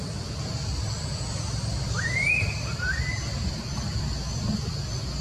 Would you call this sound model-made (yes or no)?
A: no